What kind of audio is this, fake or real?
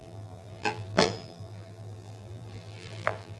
fake